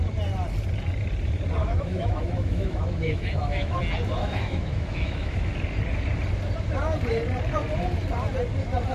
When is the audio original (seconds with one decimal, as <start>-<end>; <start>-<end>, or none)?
0.0-1.6; 3.8-4.2; 5.5-8.9